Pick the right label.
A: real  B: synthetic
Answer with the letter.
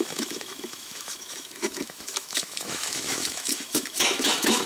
B